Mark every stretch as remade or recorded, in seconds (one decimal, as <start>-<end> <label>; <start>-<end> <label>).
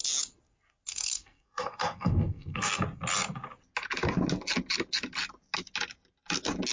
0.0-0.9 recorded; 0.9-2.8 remade; 2.8-6.7 recorded